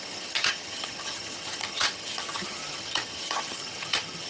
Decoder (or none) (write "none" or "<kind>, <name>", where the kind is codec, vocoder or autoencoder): vocoder, HiFi-GAN